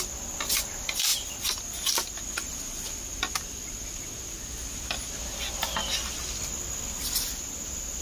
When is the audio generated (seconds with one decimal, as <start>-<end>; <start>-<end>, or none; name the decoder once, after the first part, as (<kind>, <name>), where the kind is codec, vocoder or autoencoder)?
none